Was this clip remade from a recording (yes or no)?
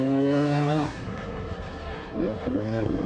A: yes